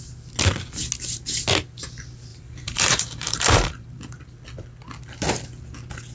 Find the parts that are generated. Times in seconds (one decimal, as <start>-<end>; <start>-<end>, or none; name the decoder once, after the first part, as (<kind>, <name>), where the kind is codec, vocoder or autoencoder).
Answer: 2.3-4.2 (vocoder, BigVGAN v2)